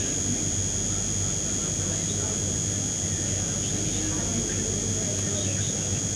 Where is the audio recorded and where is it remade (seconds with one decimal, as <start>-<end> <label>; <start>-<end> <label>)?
0.0-6.2 recorded